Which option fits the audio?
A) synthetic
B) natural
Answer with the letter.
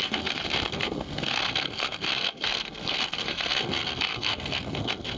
A